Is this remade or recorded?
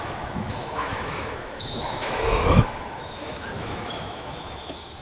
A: remade